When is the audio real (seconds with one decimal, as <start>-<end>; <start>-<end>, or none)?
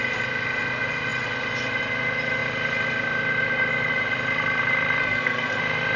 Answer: 0.0-5.0; 5.6-6.0